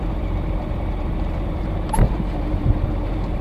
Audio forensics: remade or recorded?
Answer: remade